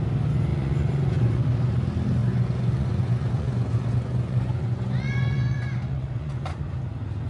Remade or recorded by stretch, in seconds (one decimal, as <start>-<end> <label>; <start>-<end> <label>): 0.0-0.5 recorded; 0.5-1.4 remade; 1.4-2.2 recorded; 2.2-6.6 remade; 6.6-7.3 recorded